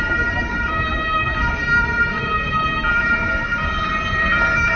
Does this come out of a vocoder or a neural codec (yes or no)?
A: no